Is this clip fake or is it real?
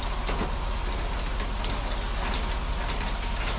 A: real